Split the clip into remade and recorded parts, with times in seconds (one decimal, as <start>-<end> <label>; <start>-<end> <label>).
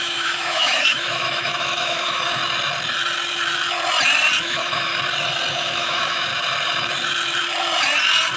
0.0-2.4 remade; 2.4-4.4 recorded; 4.4-4.9 remade; 4.9-5.5 recorded; 5.5-6.3 remade; 6.3-8.4 recorded